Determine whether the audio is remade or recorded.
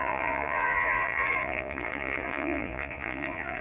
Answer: remade